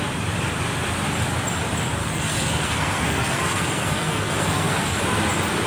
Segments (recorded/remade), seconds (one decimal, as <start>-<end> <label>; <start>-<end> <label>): 0.0-2.0 recorded; 2.0-5.0 remade; 5.0-5.7 recorded